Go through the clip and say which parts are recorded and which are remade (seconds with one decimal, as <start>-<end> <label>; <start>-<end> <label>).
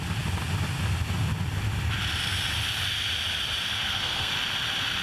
0.0-3.7 recorded; 3.7-4.3 remade; 4.3-5.0 recorded